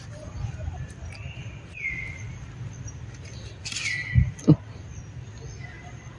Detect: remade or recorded recorded